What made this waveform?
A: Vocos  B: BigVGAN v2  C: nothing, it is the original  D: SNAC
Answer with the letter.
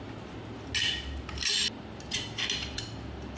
C